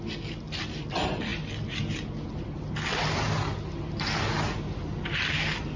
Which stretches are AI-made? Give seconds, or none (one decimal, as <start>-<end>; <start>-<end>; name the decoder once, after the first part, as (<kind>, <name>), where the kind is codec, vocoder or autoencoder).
none